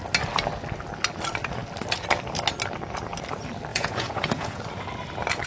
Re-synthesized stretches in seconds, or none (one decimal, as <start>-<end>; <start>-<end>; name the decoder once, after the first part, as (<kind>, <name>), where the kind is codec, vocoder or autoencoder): 3.7-4.6 (vocoder, Vocos)